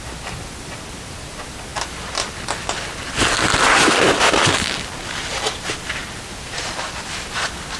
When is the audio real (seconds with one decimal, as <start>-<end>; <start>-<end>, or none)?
0.0-7.8